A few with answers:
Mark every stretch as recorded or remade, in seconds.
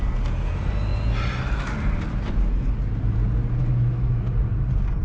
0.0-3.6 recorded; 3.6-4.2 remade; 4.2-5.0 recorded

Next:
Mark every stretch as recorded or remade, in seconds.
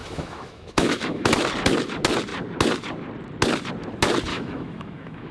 0.0-1.3 remade; 1.3-4.3 recorded; 4.3-5.3 remade